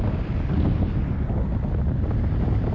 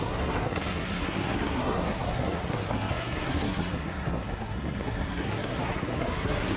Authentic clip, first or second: first